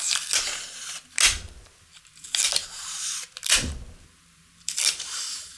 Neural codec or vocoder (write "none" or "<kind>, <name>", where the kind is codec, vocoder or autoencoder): none